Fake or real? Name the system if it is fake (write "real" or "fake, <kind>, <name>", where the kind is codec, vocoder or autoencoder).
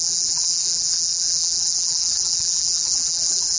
fake, vocoder, BigVGAN v2